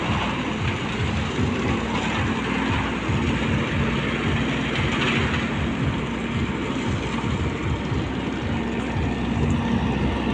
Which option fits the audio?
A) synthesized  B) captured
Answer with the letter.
B